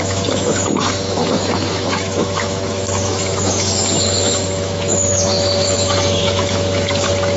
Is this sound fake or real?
fake